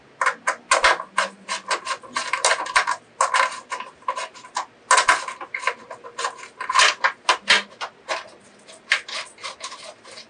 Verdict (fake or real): real